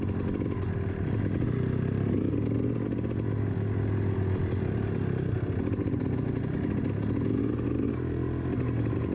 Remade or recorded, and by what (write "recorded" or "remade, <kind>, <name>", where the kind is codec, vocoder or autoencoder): recorded